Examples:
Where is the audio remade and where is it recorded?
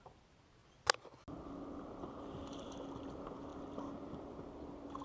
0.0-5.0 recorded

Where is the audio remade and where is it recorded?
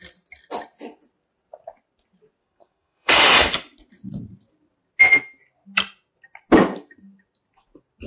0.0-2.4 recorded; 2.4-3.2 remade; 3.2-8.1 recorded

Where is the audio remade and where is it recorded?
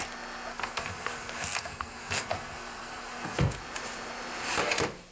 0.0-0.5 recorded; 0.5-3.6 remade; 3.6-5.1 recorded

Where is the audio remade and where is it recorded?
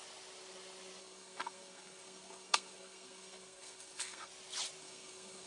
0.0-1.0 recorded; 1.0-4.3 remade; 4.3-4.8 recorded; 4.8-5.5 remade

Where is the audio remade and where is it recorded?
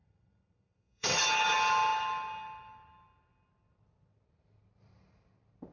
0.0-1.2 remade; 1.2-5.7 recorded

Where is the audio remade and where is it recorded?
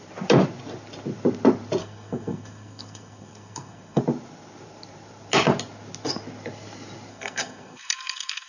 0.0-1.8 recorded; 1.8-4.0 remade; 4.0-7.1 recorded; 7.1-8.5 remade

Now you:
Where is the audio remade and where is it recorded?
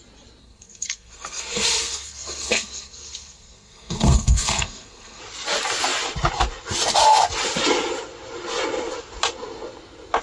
0.0-0.4 recorded; 0.4-5.2 remade; 5.2-10.2 recorded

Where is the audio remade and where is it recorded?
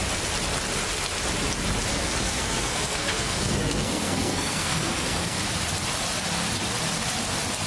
0.0-1.9 recorded; 1.9-5.4 remade; 5.4-7.7 recorded